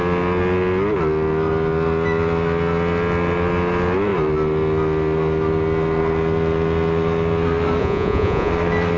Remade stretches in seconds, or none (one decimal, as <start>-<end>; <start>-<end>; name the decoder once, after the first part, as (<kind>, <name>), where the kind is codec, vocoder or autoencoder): 7.8-8.5 (vocoder, Vocos)